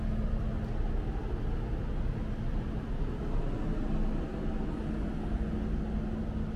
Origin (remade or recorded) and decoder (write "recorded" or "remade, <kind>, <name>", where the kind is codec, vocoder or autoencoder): recorded